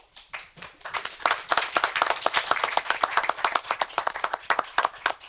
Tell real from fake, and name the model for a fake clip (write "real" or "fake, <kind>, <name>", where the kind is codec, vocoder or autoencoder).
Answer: fake, vocoder, BigVGAN v2